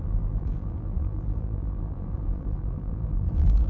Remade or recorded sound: remade